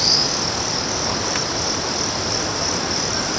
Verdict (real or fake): real